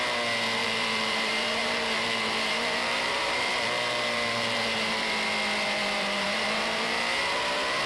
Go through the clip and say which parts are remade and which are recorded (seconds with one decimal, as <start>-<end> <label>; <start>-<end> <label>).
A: 0.0-0.6 recorded; 0.6-5.1 remade; 5.1-5.8 recorded; 5.8-7.2 remade; 7.2-7.9 recorded